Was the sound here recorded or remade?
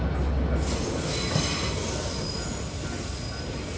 recorded